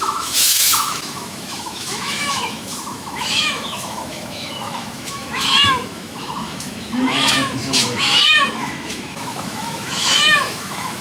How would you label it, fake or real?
fake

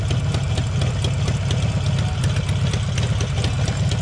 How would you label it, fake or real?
real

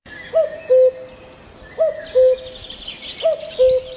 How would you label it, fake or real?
real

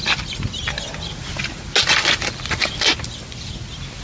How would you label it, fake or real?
real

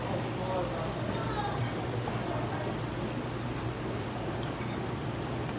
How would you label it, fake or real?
real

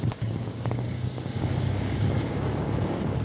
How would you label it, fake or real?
fake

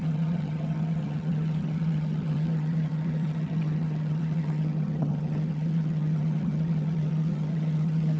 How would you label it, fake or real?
fake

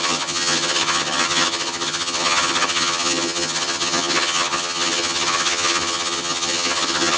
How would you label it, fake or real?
fake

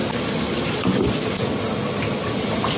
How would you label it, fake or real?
real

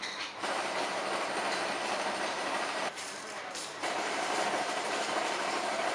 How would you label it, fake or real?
fake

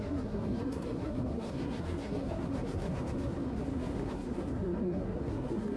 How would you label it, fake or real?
fake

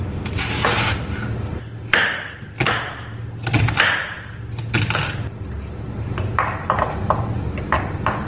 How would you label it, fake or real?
real